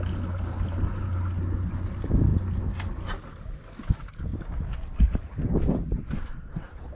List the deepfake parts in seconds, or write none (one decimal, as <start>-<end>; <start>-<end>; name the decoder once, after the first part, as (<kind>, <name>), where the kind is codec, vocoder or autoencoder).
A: none